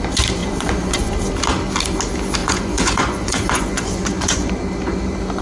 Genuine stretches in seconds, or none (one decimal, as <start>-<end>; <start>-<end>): 0.0-0.4; 1.1-2.4; 4.5-5.4